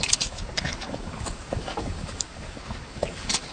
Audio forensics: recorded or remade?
remade